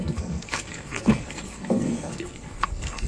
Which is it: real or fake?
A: fake